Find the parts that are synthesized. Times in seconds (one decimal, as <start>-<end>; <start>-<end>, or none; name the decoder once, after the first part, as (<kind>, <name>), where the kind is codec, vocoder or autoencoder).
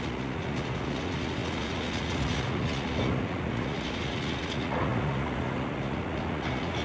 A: 0.0-6.8 (vocoder, Vocos)